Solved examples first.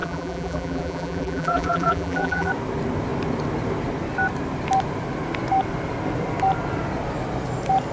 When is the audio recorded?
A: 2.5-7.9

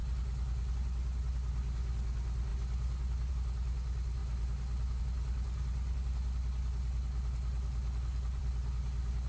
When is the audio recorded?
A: 0.0-9.3

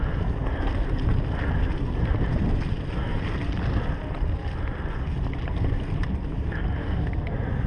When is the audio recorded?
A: 0.0-7.7

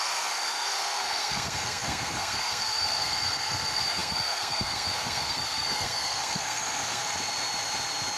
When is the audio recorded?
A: 7.0-8.2

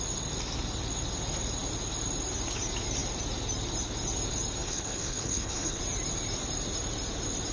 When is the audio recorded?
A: 0.0-4.6; 5.8-7.5

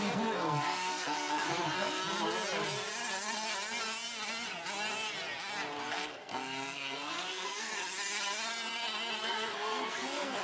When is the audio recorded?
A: 2.0-5.9; 7.7-9.2